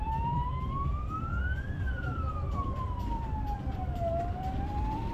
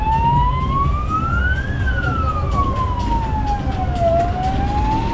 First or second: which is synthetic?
first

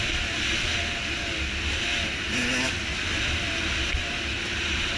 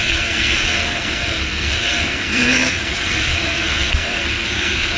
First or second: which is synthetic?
second